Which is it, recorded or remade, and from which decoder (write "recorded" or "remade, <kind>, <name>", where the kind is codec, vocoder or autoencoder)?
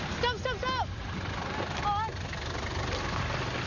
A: recorded